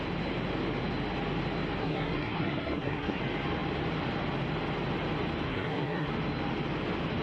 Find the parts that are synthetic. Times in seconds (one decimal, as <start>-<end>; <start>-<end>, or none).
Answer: 1.8-3.2; 5.5-6.1